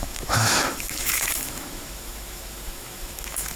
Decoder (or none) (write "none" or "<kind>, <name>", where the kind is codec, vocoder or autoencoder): autoencoder, DAC-VAE